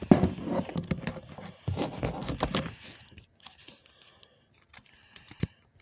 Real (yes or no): yes